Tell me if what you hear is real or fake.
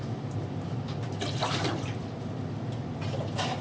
real